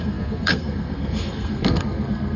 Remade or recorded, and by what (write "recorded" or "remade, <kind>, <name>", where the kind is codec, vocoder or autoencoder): remade, codec, SNAC